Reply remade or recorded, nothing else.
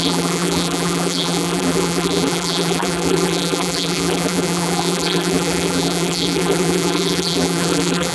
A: remade